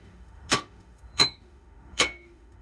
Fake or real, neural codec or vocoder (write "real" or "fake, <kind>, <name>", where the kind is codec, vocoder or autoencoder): fake, autoencoder, DAC-VAE